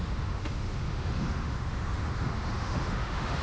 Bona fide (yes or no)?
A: no